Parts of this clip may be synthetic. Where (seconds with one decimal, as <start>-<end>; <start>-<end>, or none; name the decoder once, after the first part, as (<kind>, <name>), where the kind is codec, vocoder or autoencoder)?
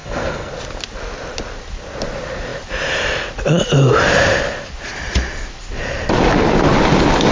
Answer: 0.0-0.5 (codec, SNAC)